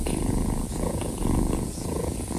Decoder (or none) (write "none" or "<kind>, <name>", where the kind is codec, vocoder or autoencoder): vocoder, Vocos